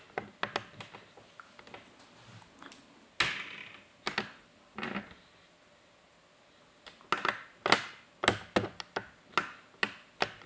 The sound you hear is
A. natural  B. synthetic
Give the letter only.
A